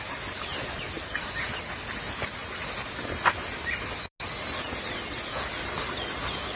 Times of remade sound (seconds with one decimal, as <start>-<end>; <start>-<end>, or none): none